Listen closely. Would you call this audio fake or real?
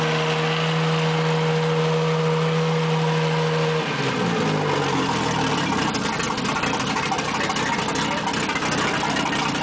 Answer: real